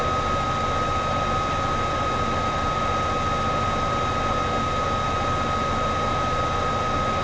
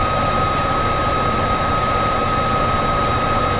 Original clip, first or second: first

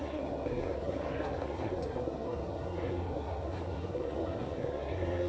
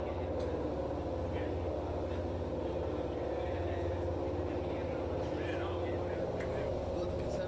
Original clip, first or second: second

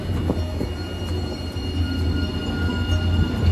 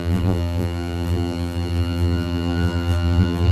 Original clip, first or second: first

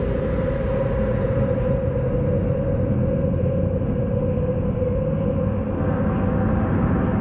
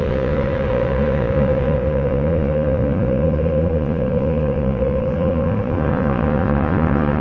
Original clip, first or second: first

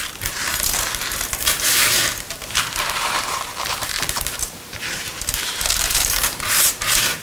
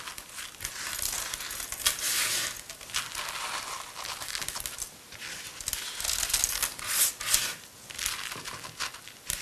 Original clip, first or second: second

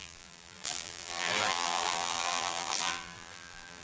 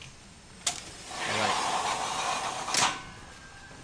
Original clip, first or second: second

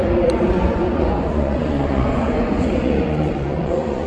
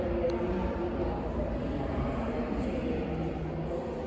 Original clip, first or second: second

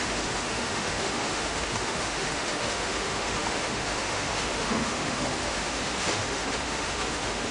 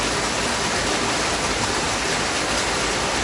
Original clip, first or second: second